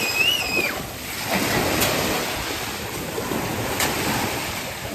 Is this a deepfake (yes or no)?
no